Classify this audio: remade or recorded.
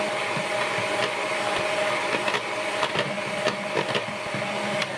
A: recorded